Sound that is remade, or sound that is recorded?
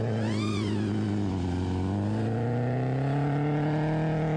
recorded